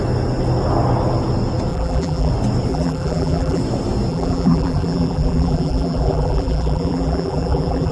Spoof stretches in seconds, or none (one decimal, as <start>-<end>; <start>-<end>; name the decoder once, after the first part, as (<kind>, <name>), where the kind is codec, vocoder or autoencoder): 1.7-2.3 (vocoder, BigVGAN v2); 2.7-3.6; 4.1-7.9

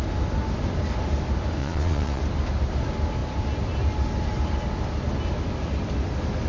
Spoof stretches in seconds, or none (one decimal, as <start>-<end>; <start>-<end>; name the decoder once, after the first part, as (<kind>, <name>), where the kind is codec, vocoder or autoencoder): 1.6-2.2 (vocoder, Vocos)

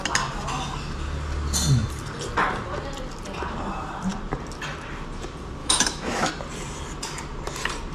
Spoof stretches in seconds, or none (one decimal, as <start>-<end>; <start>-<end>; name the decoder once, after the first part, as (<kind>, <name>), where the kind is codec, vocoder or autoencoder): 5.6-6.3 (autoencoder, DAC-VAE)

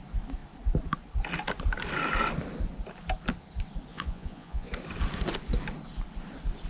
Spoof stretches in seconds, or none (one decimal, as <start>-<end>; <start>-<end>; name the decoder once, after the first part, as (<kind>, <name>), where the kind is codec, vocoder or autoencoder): 3.9-4.7 (vocoder, Vocos)

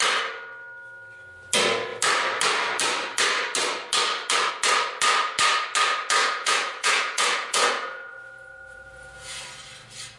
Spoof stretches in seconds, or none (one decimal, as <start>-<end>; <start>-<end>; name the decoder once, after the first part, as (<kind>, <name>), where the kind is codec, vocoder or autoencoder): 6.2-9.4 (vocoder, Vocos)

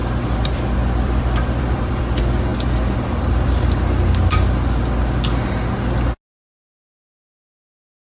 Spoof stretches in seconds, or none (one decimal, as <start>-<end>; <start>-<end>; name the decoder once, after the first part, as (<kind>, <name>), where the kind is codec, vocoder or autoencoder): 0.0-2.0 (vocoder, BigVGAN v2)

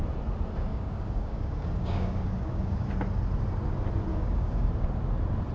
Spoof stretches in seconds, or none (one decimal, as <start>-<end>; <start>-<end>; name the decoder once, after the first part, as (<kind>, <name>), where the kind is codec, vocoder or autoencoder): 0.7-2.9 (codec, DAC); 4.1-4.8